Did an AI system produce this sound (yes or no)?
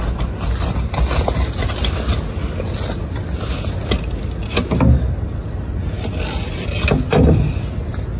no